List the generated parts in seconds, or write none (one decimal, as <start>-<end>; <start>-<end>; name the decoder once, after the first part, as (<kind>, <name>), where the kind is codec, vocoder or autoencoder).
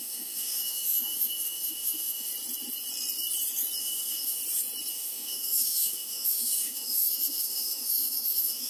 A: 0.0-2.3 (autoencoder, DAC-VAE); 3.8-4.4; 4.9-8.7